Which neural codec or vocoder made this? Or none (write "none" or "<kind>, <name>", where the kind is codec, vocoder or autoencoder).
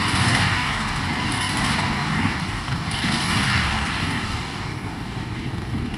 codec, DAC